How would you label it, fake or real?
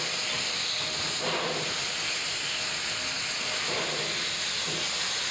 real